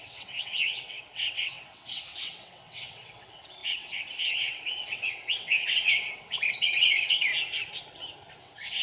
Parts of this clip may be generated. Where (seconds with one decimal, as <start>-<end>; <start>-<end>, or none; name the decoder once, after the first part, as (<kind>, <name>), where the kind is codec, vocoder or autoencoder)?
0.0-7.3 (vocoder, WaveNeXt); 8.4-8.8